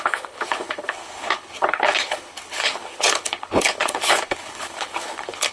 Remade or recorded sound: remade